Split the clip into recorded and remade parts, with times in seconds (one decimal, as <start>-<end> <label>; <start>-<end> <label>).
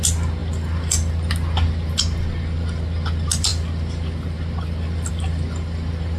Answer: 0.0-6.2 recorded